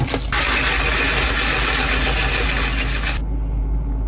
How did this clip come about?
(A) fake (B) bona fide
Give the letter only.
B